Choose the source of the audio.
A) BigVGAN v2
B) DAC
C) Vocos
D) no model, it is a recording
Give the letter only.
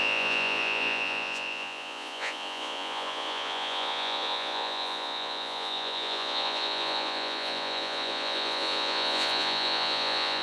C